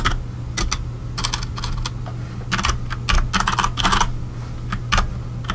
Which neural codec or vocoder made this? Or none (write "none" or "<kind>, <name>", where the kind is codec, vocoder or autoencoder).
none